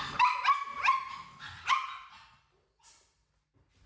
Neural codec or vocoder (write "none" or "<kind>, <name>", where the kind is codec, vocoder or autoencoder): none